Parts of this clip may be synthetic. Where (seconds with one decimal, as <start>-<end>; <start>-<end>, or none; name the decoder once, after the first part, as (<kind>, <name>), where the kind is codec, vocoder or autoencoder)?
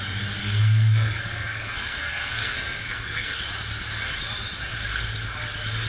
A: 0.4-3.4 (codec, SNAC)